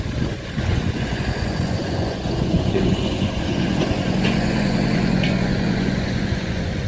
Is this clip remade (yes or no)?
yes